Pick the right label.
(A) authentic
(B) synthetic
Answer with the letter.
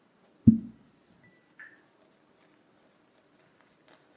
A